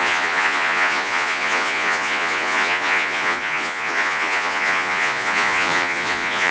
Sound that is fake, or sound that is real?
fake